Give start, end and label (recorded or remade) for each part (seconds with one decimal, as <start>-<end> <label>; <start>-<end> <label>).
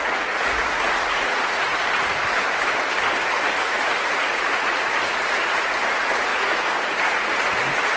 0.0-1.8 remade; 1.8-3.5 recorded; 3.5-8.0 remade